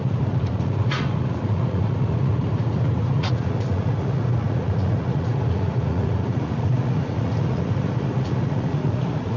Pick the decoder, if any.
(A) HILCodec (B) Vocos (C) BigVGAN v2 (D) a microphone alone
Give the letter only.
B